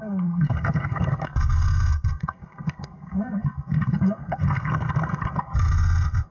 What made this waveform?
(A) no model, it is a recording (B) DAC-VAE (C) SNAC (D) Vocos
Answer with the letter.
C